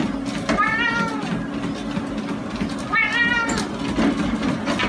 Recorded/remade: recorded